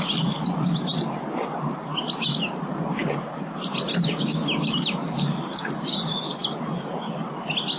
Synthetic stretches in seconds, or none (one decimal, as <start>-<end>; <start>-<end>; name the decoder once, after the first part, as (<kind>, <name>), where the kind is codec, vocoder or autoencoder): none